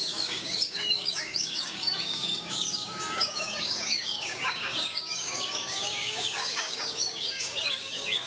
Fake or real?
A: fake